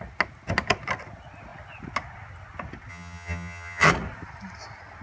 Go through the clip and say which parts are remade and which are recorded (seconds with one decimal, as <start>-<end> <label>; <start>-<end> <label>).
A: 0.0-2.9 recorded; 2.9-3.9 remade; 3.9-5.0 recorded